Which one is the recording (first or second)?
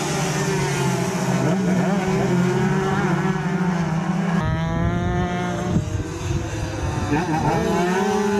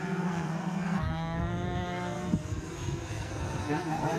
first